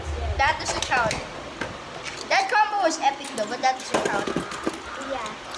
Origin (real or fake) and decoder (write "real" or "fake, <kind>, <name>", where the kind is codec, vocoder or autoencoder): real